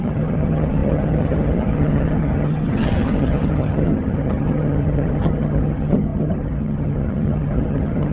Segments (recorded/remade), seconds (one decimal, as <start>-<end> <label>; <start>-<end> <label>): 0.0-8.1 remade